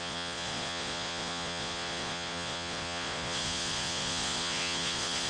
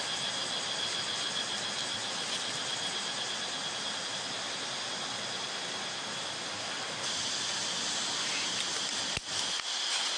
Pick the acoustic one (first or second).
second